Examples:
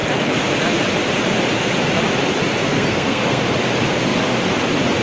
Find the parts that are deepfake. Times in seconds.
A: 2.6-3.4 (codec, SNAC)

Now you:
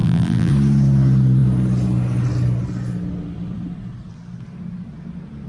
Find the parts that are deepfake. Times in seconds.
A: 0.0-0.5 (vocoder, BigVGAN v2)

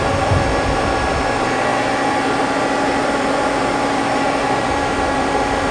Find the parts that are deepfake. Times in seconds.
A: none

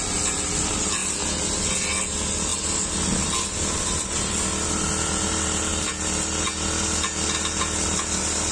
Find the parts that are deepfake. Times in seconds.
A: none

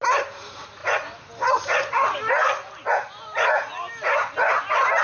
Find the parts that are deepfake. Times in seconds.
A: none

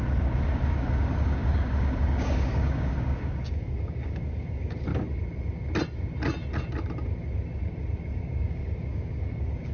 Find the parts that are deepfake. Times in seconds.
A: 0.0-4.9 (codec, DAC); 8.2-9.7

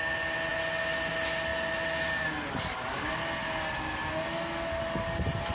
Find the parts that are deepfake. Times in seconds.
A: none

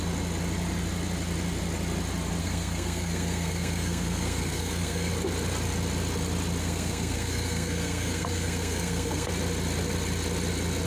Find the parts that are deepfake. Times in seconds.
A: 2.4-5.1 (codec, SNAC); 6.6-9.3